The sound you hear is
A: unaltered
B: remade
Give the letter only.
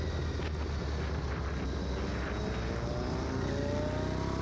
A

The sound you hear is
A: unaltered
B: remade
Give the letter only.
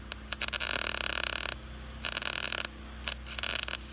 A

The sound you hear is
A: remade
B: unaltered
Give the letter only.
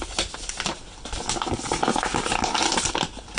B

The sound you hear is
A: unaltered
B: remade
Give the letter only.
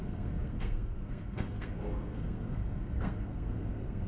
B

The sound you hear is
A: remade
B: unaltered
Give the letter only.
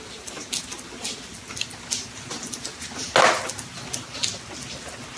B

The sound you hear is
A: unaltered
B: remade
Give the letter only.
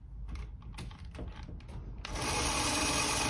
A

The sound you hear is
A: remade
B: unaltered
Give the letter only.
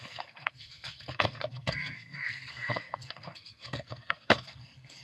A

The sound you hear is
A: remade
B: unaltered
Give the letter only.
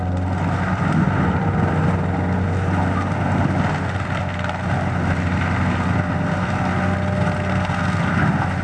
B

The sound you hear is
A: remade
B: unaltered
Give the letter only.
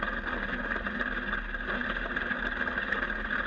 B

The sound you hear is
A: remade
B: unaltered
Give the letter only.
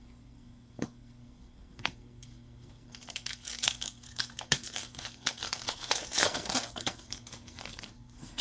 A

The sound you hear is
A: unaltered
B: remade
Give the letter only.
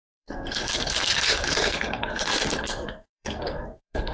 B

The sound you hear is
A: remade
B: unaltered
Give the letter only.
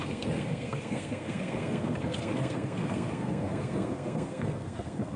A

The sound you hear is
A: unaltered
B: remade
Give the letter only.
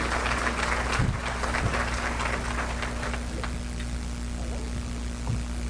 A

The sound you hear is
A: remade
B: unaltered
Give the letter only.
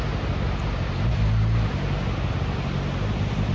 B